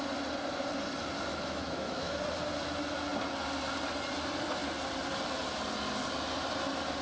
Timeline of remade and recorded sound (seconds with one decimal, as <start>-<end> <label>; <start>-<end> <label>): 0.0-1.3 recorded; 1.3-2.2 remade; 2.2-7.0 recorded